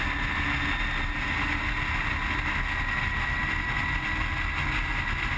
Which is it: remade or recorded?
recorded